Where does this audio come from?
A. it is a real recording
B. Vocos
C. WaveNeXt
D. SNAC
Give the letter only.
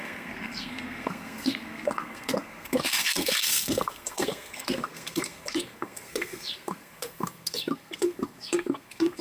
D